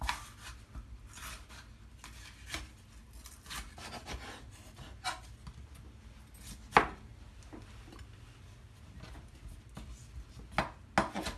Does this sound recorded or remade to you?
recorded